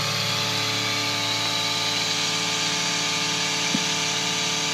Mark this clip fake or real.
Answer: real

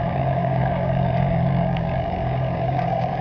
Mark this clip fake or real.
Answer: fake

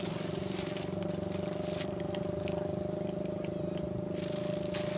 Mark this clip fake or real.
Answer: real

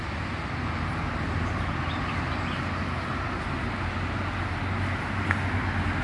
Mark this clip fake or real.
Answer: real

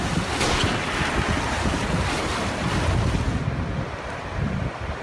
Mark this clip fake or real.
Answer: real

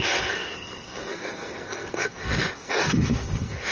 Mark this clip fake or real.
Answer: fake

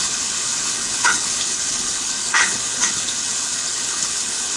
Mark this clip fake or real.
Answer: fake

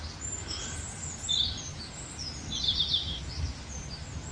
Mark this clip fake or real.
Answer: real